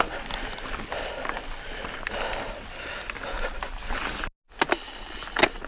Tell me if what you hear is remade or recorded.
recorded